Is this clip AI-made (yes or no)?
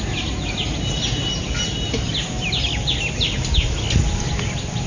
no